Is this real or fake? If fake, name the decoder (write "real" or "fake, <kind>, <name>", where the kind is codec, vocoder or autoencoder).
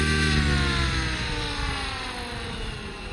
real